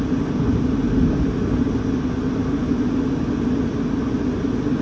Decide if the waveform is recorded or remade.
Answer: recorded